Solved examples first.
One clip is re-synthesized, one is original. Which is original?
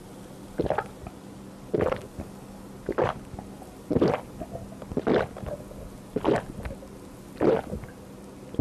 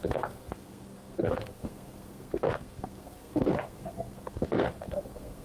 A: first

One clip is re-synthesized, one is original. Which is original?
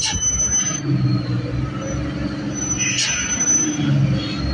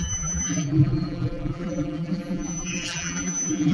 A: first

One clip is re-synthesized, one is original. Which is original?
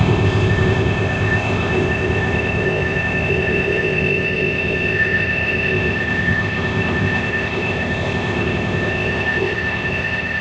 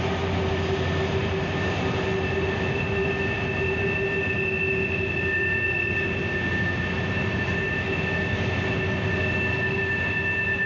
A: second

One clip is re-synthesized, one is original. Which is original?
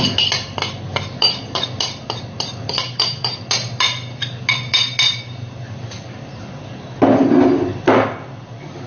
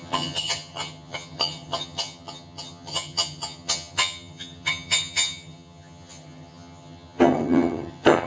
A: first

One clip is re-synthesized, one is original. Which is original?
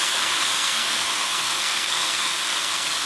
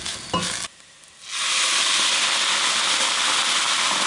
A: second